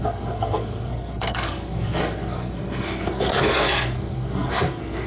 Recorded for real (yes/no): no